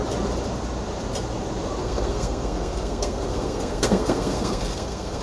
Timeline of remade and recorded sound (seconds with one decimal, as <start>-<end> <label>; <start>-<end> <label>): 0.0-1.8 recorded; 1.8-5.2 remade